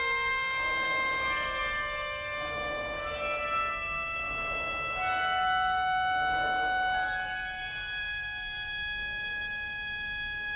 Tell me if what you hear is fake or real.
fake